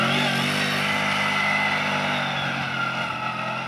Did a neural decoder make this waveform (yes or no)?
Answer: no